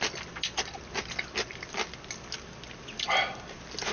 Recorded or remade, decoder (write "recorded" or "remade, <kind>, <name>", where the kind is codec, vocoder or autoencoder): recorded